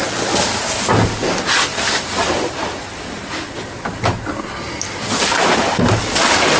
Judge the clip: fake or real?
real